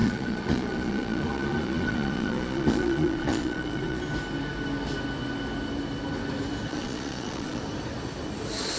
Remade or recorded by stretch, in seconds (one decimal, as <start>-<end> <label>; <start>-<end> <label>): 0.0-4.0 remade; 4.0-6.7 recorded; 6.7-7.6 remade; 7.6-8.8 recorded